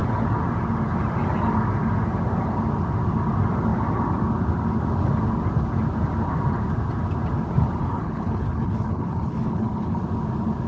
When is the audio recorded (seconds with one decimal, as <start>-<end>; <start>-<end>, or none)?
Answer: 0.0-7.8; 10.0-10.7